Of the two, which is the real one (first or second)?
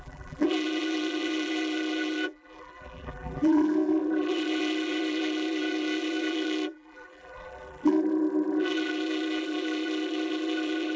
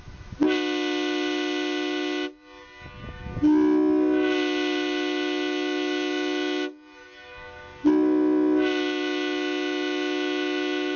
second